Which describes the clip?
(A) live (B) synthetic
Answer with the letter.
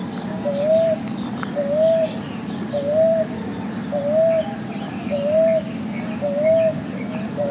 A